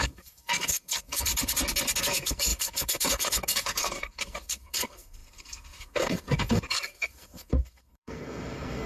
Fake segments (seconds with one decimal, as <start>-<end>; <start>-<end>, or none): 0.0-1.3; 2.0-8.9